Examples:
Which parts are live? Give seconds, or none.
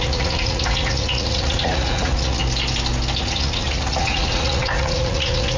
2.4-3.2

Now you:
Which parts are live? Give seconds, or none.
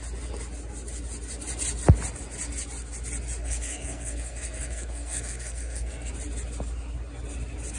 0.0-3.4; 6.1-7.8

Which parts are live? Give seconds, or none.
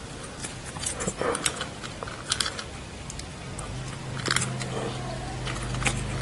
0.0-0.4; 1.1-6.2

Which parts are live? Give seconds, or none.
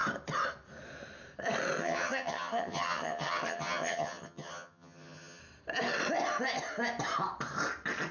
0.0-1.8; 5.4-8.1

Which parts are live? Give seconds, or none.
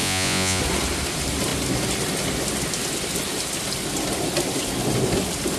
0.6-5.6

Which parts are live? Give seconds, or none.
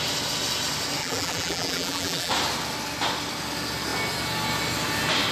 0.0-1.0; 2.3-5.3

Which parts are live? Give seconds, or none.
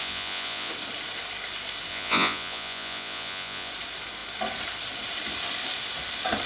0.7-1.9; 3.7-6.5